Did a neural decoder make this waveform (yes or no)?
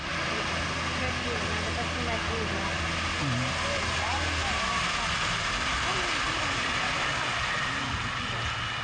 no